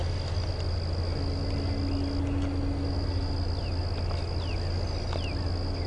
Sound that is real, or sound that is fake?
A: real